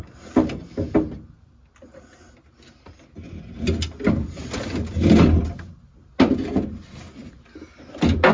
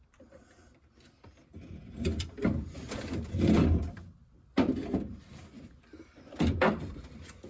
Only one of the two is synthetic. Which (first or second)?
second